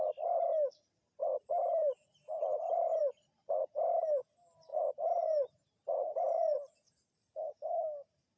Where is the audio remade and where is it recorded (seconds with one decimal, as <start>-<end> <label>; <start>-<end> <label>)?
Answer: 0.0-1.2 recorded; 1.2-3.0 remade; 3.0-4.7 recorded; 4.7-7.7 remade; 7.7-8.4 recorded